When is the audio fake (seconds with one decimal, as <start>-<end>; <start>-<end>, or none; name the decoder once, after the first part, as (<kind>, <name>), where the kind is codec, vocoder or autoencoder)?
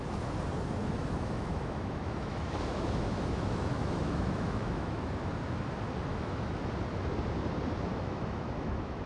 0.8-5.1 (autoencoder, DAC-VAE); 6.1-6.7; 7.9-9.1